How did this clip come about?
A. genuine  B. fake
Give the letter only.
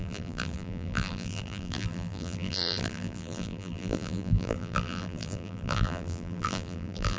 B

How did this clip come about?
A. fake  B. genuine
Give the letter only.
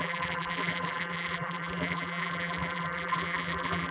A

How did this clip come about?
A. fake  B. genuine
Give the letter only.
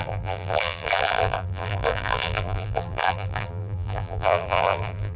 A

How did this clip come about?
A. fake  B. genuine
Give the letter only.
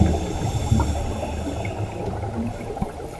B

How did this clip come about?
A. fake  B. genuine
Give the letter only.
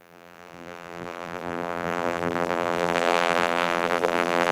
A